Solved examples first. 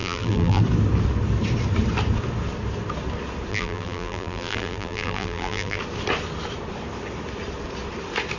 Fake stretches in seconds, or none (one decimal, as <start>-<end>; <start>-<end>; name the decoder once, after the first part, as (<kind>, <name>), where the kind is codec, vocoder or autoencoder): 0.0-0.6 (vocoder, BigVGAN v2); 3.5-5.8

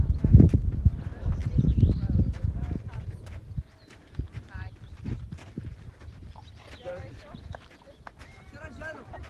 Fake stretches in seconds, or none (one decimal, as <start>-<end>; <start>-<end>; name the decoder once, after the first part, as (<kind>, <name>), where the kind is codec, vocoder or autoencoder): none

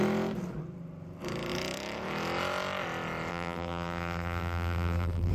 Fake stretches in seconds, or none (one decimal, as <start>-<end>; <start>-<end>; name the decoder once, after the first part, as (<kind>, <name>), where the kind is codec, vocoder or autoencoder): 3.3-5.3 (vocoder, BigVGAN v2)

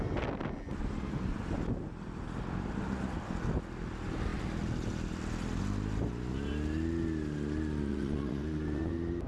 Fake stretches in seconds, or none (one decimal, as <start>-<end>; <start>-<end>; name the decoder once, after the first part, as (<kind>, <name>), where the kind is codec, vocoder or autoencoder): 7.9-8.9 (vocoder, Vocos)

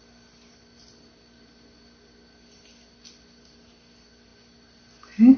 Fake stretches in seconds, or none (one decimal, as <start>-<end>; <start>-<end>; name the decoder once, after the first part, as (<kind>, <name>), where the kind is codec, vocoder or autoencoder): none

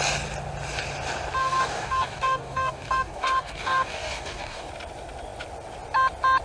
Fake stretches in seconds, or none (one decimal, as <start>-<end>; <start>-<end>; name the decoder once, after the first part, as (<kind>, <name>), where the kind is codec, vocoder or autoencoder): 1.4-4.7 (codec, DAC)

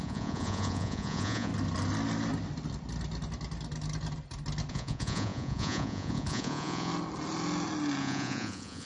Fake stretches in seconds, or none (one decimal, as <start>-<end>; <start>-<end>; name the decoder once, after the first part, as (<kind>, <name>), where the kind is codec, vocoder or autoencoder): 0.0-1.5 (vocoder, Vocos); 4.7-6.9; 8.0-8.9